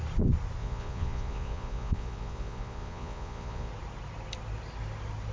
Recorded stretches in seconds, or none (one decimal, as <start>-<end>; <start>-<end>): 0.0-0.6; 3.7-5.3